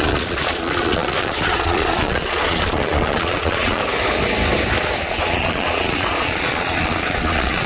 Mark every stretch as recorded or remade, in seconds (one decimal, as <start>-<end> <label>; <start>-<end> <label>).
0.0-3.8 remade; 3.8-5.0 recorded; 5.0-7.7 remade